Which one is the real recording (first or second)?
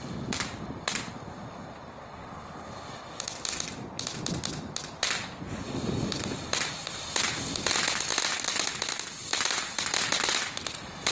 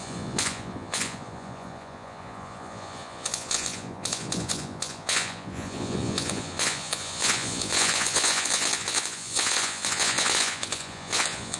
first